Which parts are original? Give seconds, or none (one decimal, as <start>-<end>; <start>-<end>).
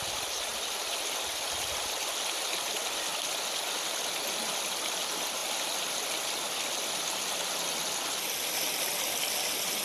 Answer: 0.0-9.8